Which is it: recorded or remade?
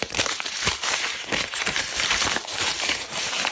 remade